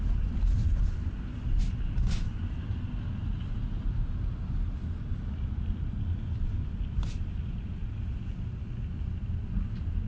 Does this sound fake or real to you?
real